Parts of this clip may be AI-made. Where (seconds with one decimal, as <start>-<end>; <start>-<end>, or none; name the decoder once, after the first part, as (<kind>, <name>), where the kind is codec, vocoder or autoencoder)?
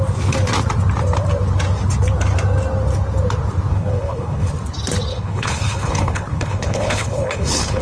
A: 3.7-4.5 (codec, HILCodec); 5.1-7.8